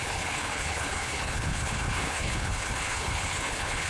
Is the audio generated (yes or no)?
yes